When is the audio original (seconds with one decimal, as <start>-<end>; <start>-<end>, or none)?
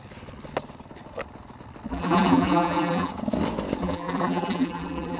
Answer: 0.0-1.9; 3.1-3.8